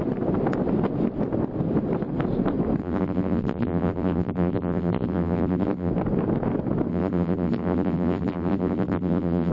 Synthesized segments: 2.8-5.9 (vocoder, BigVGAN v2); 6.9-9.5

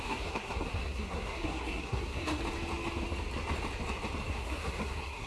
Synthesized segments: 0.0-2.4 (codec, SNAC); 4.3-5.3